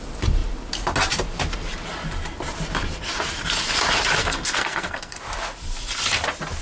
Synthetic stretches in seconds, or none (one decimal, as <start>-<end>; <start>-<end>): 4.2-5.2